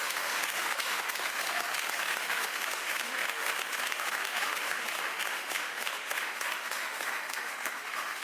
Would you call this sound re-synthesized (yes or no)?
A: yes